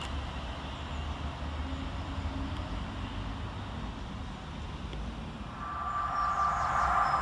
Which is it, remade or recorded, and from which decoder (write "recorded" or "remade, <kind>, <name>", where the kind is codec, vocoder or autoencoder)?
recorded